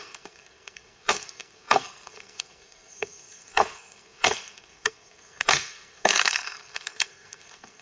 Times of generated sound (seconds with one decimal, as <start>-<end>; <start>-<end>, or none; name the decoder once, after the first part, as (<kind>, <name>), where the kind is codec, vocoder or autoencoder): 0.0-7.8 (codec, SNAC)